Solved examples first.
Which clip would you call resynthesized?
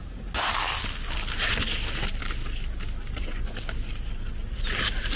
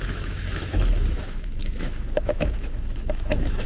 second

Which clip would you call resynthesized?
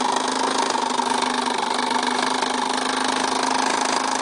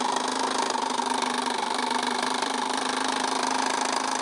second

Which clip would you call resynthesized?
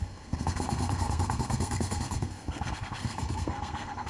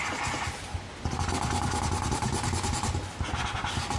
first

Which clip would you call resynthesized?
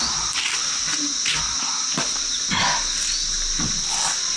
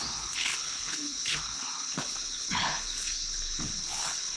second